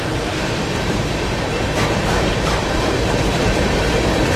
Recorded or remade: remade